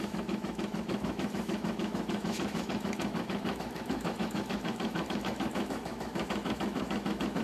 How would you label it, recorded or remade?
remade